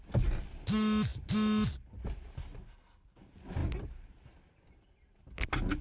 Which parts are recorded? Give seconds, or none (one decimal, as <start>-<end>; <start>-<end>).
0.0-5.8